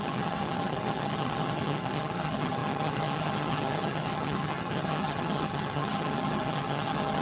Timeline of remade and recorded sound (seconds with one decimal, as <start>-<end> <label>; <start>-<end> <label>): 0.0-7.2 remade